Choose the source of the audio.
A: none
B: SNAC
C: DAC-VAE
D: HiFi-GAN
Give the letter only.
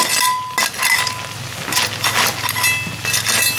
A